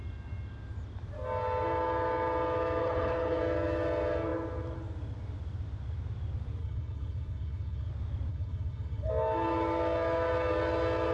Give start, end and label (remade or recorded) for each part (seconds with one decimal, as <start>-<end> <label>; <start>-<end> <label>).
0.0-2.8 recorded; 2.8-3.4 remade; 3.4-6.6 recorded; 6.6-7.9 remade; 7.9-8.3 recorded; 8.3-9.1 remade; 9.1-11.1 recorded